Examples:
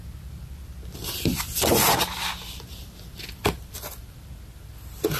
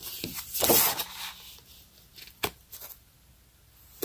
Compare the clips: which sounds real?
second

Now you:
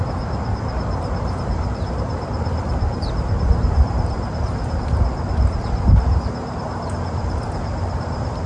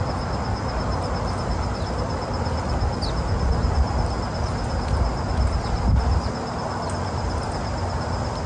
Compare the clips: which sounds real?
second